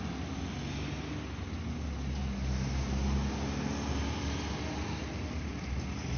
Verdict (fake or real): real